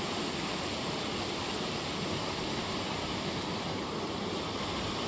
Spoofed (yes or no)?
no